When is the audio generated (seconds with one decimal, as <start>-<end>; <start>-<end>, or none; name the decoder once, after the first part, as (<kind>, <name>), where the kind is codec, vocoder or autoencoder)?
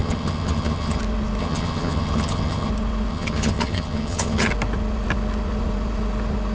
0.0-1.0 (vocoder, HiFi-GAN); 1.4-2.7; 3.1-4.5